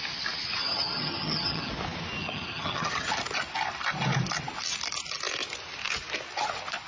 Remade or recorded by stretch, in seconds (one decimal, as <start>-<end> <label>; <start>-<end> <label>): 0.0-0.6 recorded; 0.6-1.7 remade; 1.7-2.2 recorded; 2.2-3.1 remade; 3.1-6.9 recorded